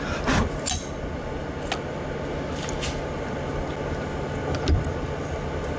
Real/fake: real